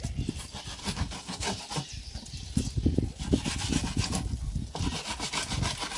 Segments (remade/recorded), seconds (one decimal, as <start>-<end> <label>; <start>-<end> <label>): 0.0-0.8 recorded; 0.8-1.6 remade; 1.6-6.0 recorded